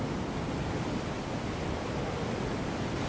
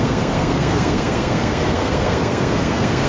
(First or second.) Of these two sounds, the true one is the first